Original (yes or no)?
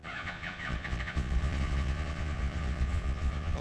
no